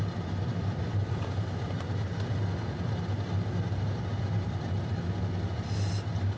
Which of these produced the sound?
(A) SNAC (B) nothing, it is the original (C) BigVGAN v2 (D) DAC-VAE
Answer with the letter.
B